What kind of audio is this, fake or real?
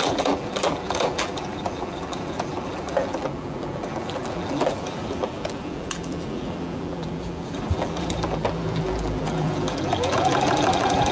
fake